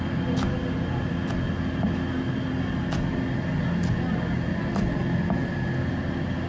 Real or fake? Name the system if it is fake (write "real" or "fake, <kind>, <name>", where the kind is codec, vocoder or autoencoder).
real